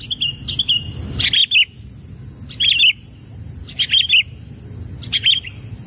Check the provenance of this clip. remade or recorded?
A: recorded